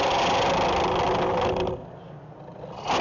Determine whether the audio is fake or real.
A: real